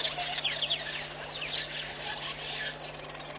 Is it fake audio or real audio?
real